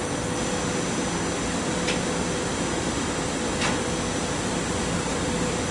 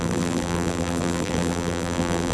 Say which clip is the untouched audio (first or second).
first